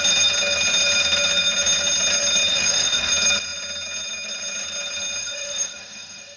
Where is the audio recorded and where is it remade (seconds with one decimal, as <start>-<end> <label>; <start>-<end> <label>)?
0.0-2.5 recorded; 2.5-3.1 remade; 3.1-5.2 recorded; 5.2-6.4 remade